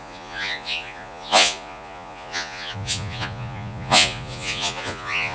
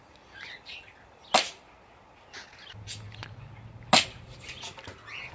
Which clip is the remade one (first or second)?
first